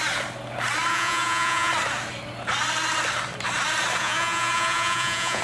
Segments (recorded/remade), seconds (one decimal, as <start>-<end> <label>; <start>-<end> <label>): 0.0-0.9 recorded; 0.9-1.7 remade; 1.7-4.0 recorded; 4.0-5.4 remade